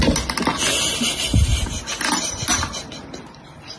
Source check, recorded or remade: recorded